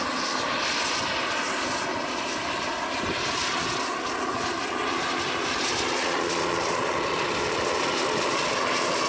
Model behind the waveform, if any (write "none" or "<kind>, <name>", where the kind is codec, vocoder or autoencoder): none